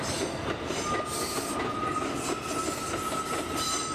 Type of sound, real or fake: real